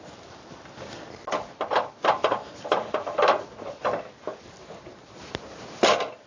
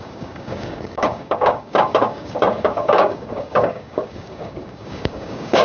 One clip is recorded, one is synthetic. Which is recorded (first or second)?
first